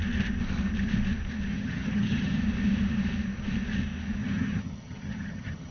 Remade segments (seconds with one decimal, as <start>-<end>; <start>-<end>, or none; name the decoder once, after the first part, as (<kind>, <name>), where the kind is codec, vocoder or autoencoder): 1.5-2.4 (vocoder, HiFi-GAN); 4.2-5.7